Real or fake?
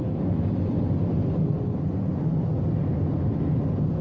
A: real